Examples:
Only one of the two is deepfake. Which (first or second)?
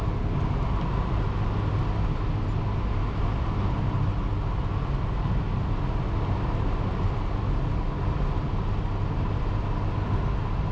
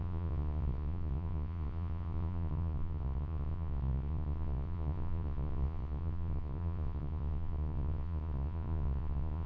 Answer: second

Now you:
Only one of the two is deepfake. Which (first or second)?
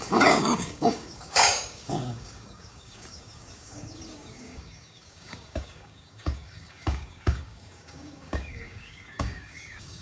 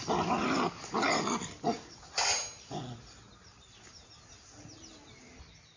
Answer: first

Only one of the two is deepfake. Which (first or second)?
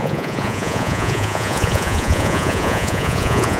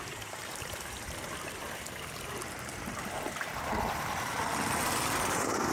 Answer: first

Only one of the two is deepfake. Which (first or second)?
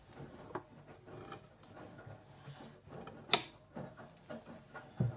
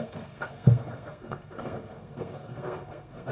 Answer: second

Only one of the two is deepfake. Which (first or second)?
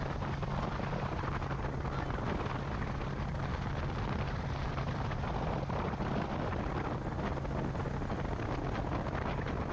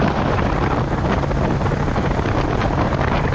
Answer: second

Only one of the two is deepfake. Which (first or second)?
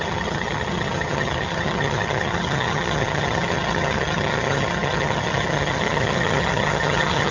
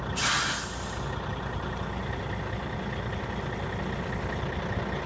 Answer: first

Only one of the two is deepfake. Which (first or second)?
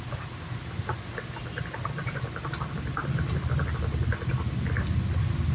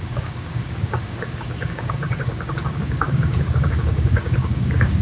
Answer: second